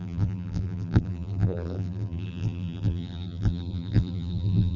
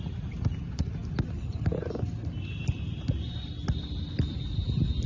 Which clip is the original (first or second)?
second